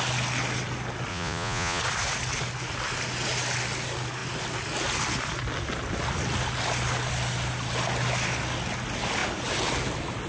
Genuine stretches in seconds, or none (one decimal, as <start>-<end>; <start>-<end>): 0.0-1.1; 1.8-10.3